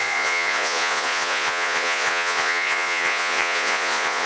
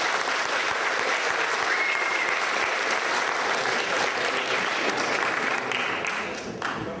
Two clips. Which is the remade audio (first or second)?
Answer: first